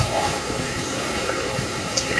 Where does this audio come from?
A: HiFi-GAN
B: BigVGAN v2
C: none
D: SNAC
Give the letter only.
D